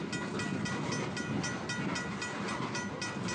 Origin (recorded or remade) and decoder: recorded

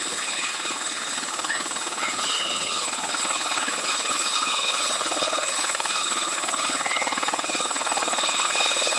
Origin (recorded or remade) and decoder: remade, codec, HILCodec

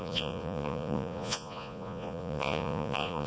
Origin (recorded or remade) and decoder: remade, vocoder, Vocos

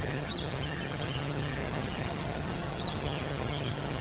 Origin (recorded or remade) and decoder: remade, vocoder, HiFi-GAN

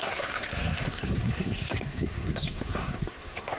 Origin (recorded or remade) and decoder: remade, codec, SNAC